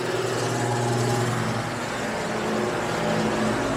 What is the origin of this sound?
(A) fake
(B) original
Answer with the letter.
B